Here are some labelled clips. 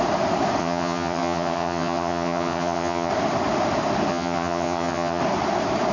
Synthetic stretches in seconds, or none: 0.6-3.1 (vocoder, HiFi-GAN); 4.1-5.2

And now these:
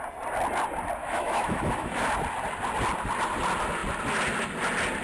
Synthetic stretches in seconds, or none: 1.0-2.0 (autoencoder, DAC-VAE)